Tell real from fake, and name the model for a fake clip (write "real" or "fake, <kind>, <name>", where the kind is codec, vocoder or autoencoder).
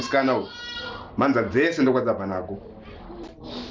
real